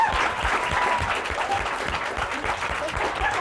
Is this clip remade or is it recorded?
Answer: remade